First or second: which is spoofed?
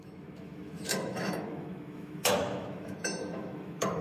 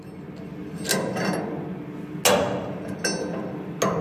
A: first